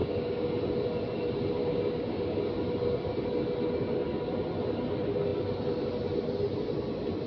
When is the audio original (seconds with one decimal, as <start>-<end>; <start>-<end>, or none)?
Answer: 0.5-1.6; 2.4-7.3